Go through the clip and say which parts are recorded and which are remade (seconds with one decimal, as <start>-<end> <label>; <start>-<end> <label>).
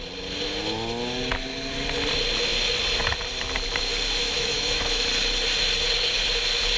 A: 0.0-4.2 recorded; 4.2-5.0 remade; 5.0-6.8 recorded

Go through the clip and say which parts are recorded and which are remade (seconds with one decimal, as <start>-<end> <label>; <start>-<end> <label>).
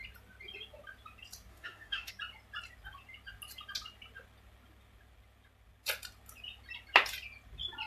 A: 0.0-1.5 recorded; 1.5-2.1 remade; 2.1-7.9 recorded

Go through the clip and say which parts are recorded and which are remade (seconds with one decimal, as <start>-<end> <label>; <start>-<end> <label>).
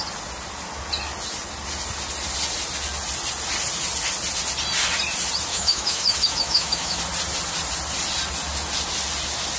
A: 0.0-5.5 recorded; 5.5-7.0 remade; 7.0-9.6 recorded